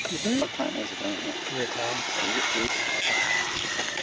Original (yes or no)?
no